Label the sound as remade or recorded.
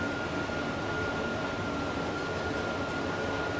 recorded